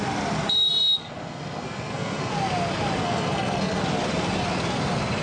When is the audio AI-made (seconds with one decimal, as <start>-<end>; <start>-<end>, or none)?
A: 1.0-2.3; 3.0-3.8